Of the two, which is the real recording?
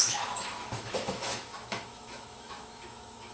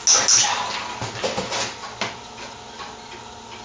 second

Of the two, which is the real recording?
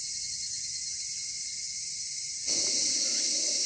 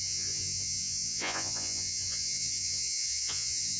first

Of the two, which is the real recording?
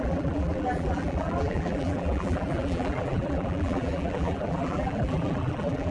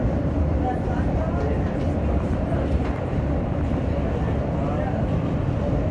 second